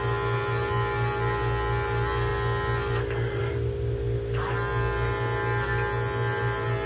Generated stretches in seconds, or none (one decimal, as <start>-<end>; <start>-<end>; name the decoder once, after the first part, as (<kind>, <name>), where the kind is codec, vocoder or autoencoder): none